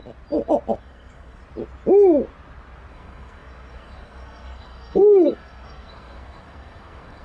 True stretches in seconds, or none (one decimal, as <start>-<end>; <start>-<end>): 0.0-0.8; 1.4-2.9